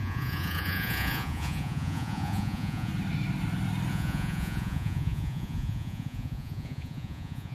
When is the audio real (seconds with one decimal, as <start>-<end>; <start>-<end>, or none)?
2.9-3.9